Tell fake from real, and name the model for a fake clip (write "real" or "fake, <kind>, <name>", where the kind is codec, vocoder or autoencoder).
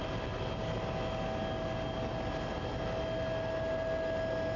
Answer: real